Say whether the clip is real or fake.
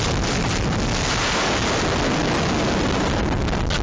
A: real